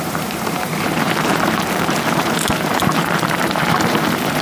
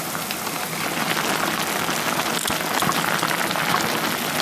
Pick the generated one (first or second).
first